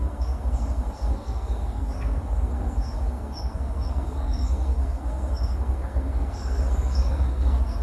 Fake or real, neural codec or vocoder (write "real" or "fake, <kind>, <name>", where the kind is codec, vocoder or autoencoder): fake, codec, SNAC